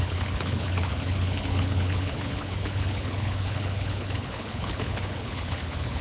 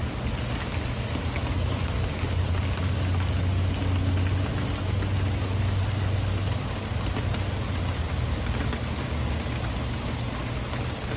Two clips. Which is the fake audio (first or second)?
first